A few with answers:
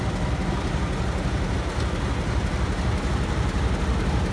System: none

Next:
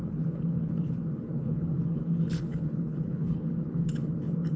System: codec, HILCodec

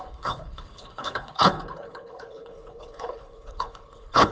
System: codec, HILCodec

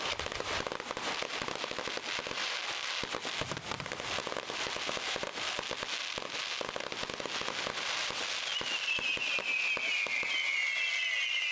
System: none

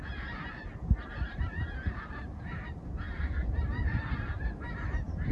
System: none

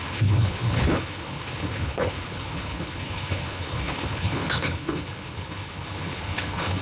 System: codec, HILCodec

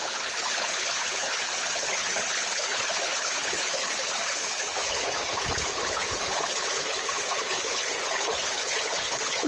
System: codec, HILCodec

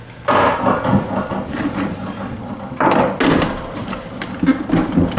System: none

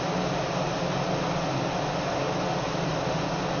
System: none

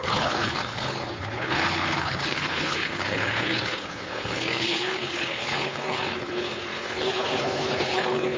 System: codec, HILCodec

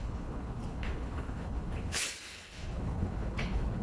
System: codec, HILCodec